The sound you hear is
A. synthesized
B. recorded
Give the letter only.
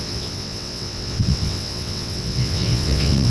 A